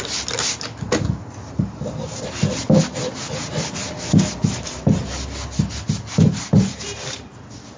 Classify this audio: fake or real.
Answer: real